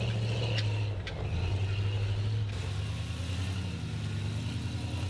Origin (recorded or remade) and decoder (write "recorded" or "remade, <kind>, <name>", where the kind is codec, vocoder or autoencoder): recorded